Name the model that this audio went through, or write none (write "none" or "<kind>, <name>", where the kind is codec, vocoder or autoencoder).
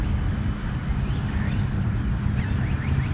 none